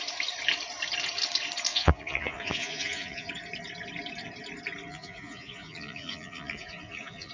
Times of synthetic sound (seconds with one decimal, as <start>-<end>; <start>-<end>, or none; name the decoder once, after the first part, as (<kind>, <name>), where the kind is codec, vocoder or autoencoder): 1.7-3.3 (vocoder, Vocos); 4.9-7.3